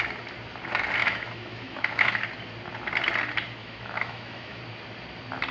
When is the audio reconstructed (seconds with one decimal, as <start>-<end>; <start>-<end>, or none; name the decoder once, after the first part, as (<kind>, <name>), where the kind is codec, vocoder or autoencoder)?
1.0-2.2 (autoencoder, DAC-VAE); 3.6-4.6